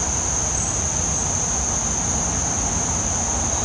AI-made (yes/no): no